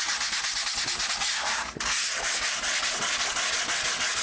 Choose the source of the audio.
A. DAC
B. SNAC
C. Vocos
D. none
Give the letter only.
D